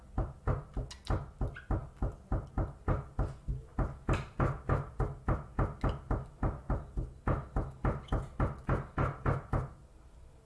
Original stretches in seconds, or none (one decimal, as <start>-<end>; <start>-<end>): 0.0-10.5